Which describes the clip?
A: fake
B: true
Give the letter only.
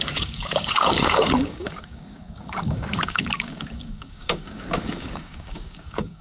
A